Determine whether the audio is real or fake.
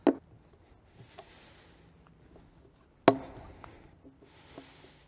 real